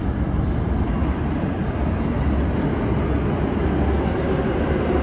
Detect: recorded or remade recorded